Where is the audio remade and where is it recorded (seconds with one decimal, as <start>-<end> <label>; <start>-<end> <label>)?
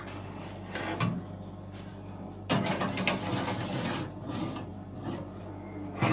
0.0-1.9 recorded; 1.9-3.4 remade; 3.4-4.7 recorded; 4.7-5.4 remade; 5.4-6.1 recorded